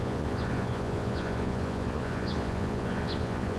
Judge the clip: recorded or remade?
remade